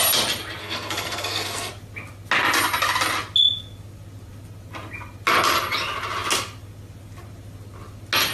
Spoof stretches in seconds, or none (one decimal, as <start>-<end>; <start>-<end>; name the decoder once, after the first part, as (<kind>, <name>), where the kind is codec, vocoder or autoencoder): 0.6-1.7 (codec, SNAC)